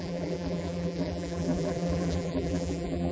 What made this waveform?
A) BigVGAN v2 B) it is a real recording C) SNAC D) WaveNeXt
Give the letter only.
A